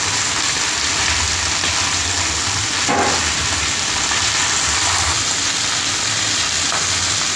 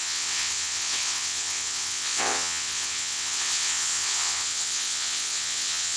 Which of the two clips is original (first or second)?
first